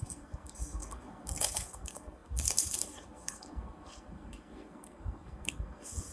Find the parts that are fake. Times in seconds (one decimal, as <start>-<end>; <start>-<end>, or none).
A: 0.0-6.1